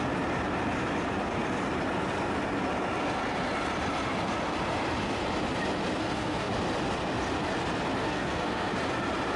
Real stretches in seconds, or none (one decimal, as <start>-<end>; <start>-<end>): 0.0-6.0; 6.5-8.0; 8.7-9.4